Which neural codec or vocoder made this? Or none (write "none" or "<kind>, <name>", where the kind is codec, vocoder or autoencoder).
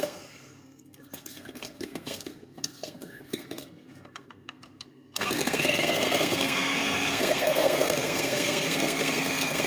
codec, SNAC